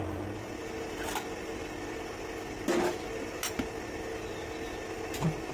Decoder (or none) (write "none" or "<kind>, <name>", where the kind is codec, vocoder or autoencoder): none